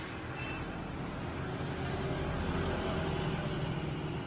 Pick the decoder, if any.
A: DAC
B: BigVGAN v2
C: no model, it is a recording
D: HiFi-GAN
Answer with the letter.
C